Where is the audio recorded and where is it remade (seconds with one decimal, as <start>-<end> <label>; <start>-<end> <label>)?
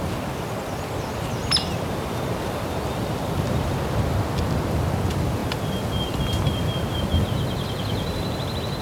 0.0-8.8 recorded